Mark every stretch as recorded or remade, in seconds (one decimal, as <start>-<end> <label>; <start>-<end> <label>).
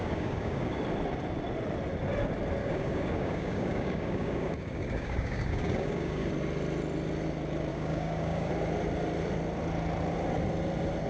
0.0-0.8 remade; 0.8-2.6 recorded; 2.6-6.3 remade; 6.3-7.7 recorded; 7.7-8.5 remade; 8.5-11.1 recorded